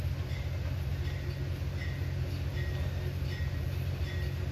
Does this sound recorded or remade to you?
recorded